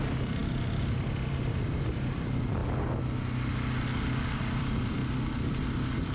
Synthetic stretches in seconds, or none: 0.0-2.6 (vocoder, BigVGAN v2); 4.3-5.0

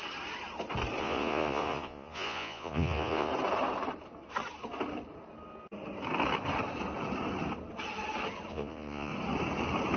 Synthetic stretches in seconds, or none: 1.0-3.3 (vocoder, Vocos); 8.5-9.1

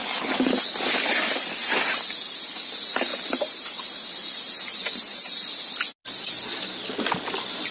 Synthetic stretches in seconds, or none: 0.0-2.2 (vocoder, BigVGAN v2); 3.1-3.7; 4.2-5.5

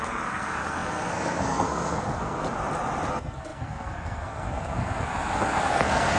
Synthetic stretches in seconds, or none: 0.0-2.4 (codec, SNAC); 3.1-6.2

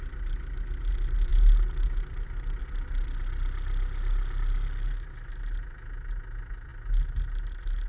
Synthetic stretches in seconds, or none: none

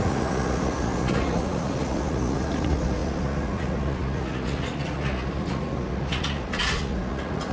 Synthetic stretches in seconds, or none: 0.0-7.5 (vocoder, Vocos)